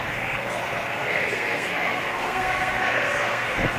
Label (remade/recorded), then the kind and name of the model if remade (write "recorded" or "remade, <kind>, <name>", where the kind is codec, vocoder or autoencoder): remade, codec, SNAC